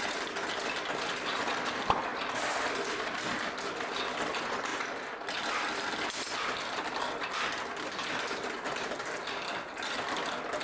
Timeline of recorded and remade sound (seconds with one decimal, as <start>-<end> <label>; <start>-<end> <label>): 0.0-10.6 recorded